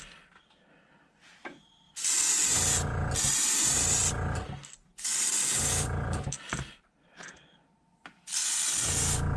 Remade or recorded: recorded